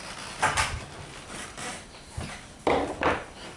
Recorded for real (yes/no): yes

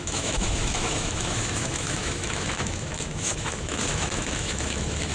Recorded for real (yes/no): no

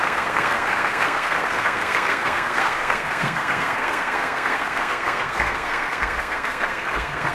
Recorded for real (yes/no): no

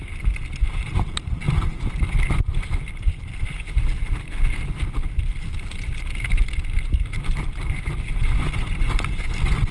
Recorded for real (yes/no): yes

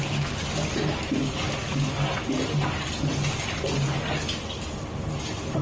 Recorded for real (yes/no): yes